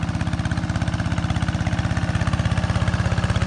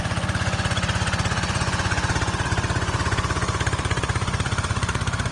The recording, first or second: first